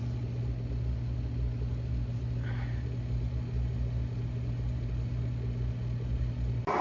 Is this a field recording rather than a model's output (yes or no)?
yes